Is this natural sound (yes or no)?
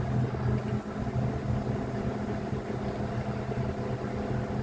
yes